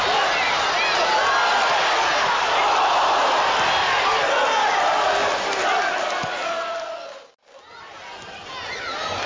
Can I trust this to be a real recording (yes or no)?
yes